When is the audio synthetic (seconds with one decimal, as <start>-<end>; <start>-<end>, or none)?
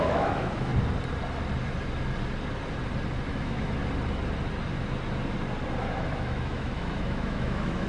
0.0-0.7; 3.3-3.8; 5.8-7.9